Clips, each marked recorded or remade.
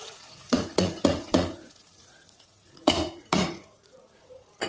remade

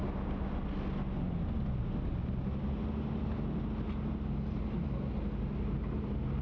recorded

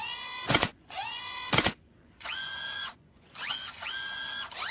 remade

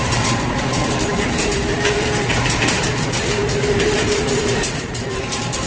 remade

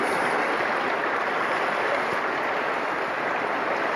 recorded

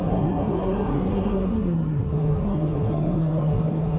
remade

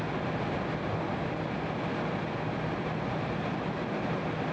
recorded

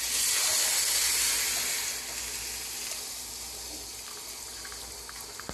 recorded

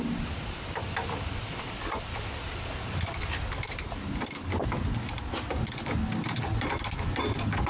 recorded